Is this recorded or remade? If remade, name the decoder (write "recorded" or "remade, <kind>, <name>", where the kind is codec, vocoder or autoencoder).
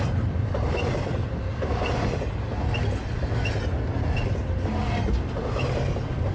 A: recorded